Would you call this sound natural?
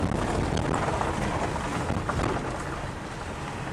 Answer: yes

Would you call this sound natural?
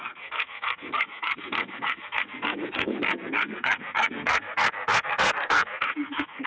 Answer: no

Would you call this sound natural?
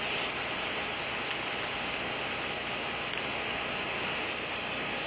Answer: yes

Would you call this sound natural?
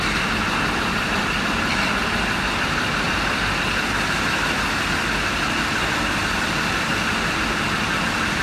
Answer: yes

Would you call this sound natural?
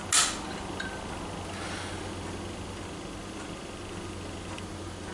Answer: yes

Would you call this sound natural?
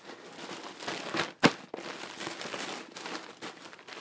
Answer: yes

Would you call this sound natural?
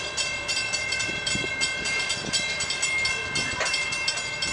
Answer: no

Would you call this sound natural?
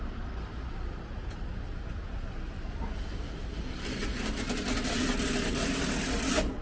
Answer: yes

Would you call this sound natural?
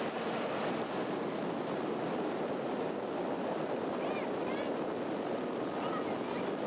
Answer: yes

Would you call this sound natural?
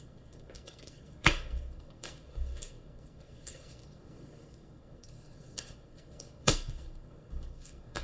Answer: no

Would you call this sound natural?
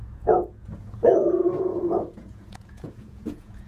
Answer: no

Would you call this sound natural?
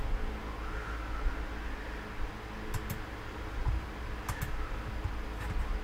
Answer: yes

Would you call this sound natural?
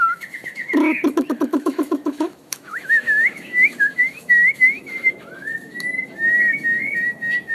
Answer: no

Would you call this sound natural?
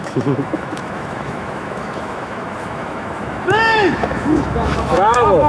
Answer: no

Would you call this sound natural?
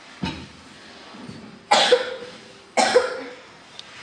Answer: yes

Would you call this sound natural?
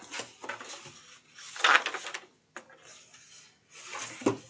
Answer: yes